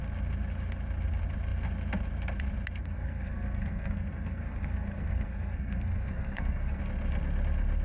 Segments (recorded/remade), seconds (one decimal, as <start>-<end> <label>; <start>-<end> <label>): 0.0-2.8 recorded; 2.8-6.8 remade; 6.8-7.8 recorded

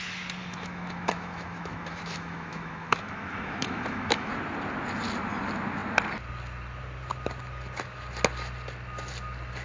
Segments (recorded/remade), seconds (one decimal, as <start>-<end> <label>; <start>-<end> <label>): 0.0-0.4 recorded; 0.4-4.3 remade; 4.3-9.6 recorded

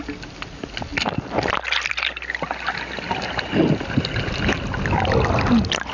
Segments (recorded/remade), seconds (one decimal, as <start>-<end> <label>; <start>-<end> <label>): 0.0-5.9 recorded

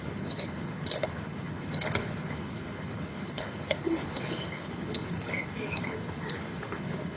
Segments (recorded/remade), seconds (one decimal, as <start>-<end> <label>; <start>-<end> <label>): 0.0-7.2 remade